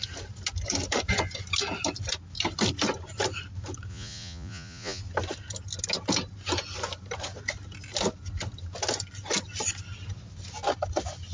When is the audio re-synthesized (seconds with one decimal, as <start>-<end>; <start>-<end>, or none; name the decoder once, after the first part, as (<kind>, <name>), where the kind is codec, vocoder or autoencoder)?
3.9-5.0 (vocoder, Vocos)